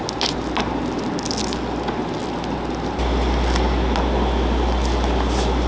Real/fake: real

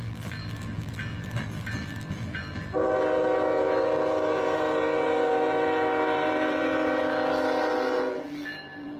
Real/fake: fake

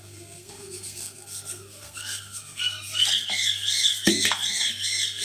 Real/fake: fake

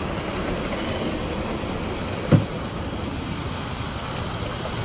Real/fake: real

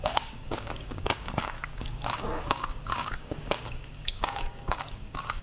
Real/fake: fake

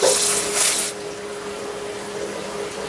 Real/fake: real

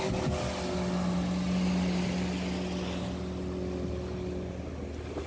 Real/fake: real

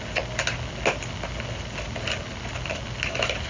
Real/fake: real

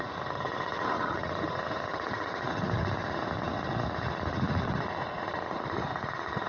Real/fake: fake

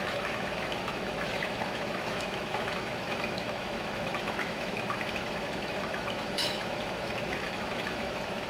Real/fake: fake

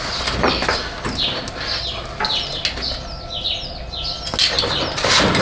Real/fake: real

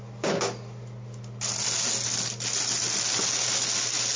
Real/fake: real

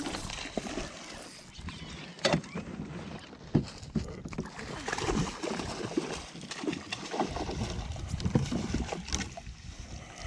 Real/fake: real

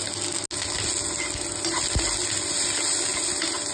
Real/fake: real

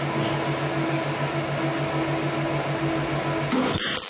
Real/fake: real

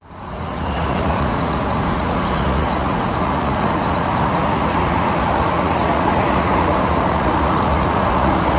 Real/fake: fake